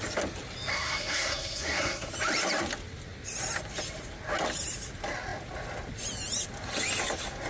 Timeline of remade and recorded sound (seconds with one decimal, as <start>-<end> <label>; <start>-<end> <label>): 0.0-0.7 recorded; 0.7-2.1 remade; 2.1-7.5 recorded